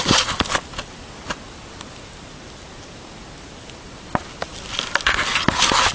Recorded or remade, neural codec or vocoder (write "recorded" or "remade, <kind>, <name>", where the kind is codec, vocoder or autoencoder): recorded